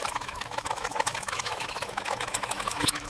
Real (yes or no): no